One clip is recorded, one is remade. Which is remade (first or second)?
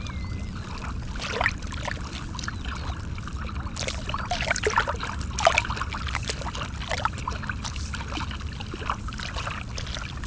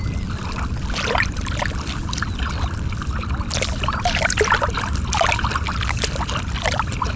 second